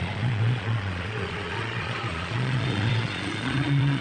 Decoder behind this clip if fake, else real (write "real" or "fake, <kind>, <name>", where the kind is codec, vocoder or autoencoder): fake, vocoder, Vocos